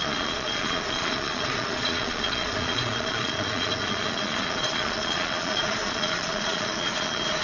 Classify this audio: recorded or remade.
remade